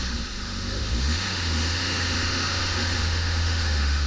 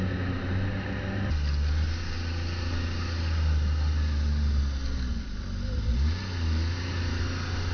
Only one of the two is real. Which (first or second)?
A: second